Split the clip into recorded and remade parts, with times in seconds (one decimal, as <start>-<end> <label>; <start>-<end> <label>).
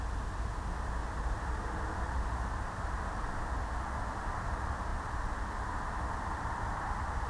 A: 0.0-1.0 recorded; 1.0-3.4 remade; 3.4-7.3 recorded